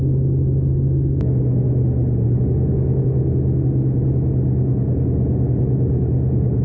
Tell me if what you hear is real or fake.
real